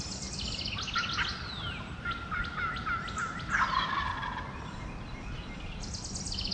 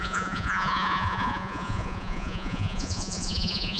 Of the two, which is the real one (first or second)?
first